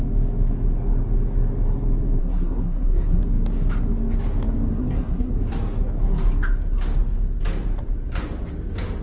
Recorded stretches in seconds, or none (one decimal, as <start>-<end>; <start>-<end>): 0.0-2.2; 3.2-4.7; 5.4-9.0